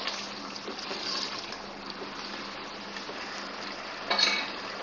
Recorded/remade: recorded